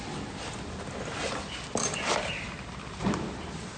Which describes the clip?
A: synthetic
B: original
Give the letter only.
B